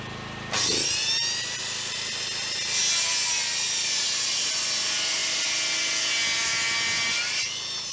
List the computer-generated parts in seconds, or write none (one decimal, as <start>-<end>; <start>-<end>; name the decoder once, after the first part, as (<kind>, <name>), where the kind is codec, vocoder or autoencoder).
none